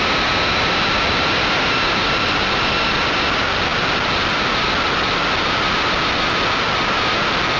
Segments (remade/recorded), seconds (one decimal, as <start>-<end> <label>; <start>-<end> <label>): 0.0-7.6 recorded